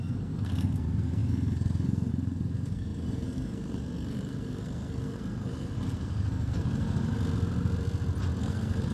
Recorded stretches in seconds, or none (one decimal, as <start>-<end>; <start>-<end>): 7.1-8.4